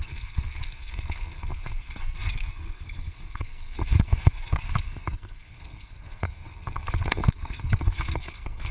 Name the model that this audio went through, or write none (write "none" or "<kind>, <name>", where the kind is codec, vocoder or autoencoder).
codec, SNAC